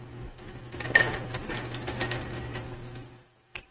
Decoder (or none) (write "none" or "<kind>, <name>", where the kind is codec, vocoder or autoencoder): none